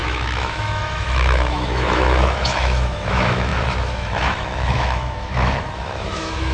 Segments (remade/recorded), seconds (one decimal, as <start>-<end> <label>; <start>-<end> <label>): 0.0-6.5 remade